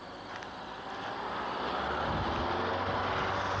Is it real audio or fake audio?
real